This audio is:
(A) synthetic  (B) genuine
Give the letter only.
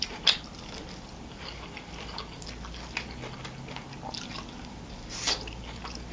B